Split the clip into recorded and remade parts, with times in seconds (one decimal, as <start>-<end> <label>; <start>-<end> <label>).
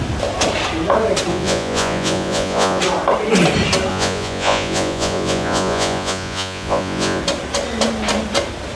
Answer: 0.0-1.3 recorded; 1.3-2.8 remade; 2.8-3.9 recorded; 3.9-7.2 remade; 7.2-8.8 recorded